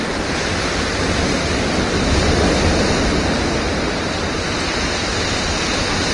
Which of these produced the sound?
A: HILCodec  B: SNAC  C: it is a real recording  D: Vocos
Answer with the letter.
C